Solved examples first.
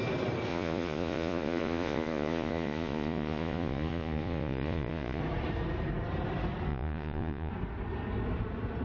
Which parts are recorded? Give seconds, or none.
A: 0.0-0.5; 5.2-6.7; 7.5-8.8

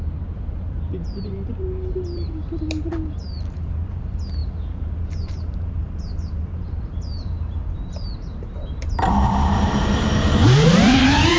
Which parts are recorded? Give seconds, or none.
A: none

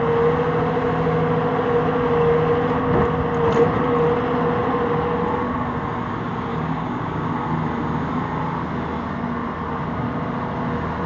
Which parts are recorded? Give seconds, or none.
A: 0.0-6.5; 7.3-11.1

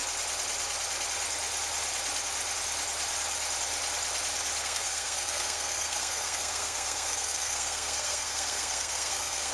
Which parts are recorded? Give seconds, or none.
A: 0.0-4.6

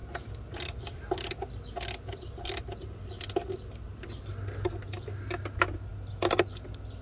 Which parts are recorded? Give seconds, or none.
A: 0.0-7.0